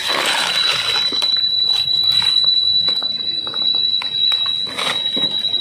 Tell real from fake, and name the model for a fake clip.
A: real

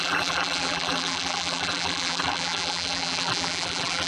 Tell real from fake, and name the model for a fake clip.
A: fake, vocoder, BigVGAN v2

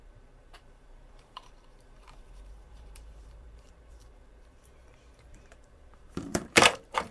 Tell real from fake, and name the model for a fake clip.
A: fake, vocoder, BigVGAN v2